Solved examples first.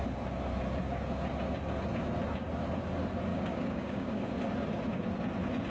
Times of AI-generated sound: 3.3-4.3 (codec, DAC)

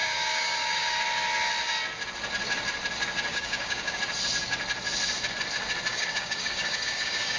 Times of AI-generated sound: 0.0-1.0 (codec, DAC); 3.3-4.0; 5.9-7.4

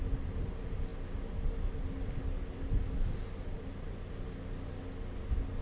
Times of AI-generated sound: none